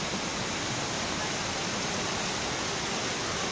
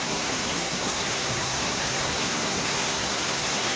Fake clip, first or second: second